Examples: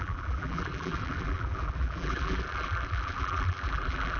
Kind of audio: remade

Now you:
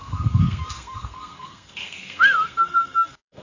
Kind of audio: remade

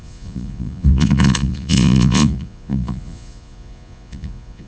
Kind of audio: remade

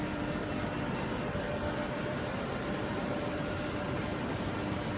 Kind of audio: remade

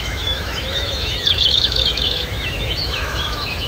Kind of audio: remade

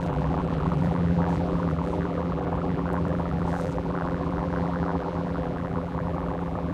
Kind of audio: remade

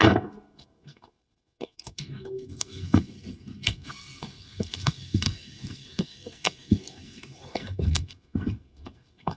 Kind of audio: remade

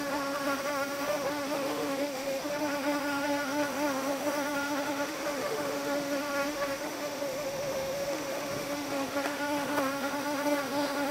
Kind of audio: remade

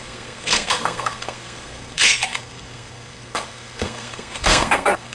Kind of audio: remade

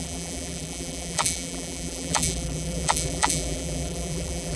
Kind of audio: remade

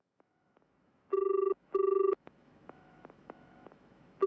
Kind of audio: remade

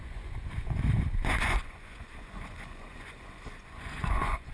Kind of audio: remade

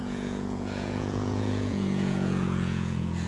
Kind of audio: remade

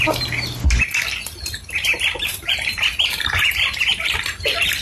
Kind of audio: recorded